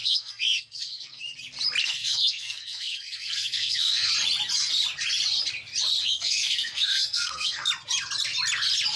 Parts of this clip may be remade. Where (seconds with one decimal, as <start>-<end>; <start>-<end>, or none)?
0.0-1.2; 1.8-4.1; 6.0-7.7